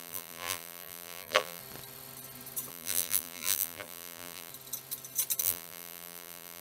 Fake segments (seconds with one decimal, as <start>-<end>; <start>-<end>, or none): 0.0-1.6; 2.7-4.5; 5.4-6.6